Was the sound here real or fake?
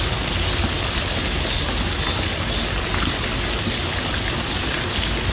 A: real